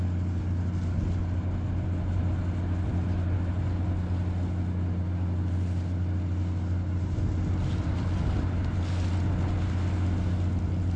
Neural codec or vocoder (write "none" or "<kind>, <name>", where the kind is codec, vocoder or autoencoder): none